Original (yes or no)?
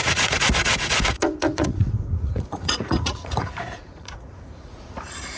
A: no